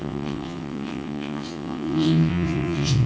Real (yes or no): no